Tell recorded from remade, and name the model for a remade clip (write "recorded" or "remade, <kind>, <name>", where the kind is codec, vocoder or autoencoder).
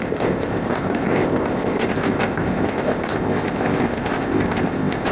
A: remade, codec, ZipCodec